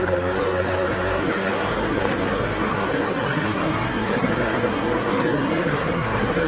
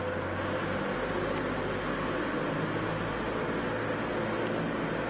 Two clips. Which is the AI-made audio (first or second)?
first